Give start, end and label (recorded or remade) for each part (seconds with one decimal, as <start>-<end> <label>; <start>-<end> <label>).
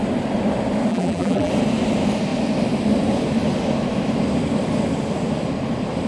0.0-0.9 recorded; 0.9-1.5 remade; 1.5-6.1 recorded